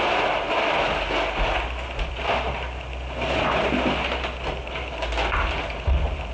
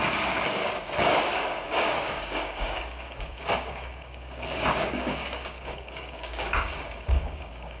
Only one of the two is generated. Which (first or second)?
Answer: second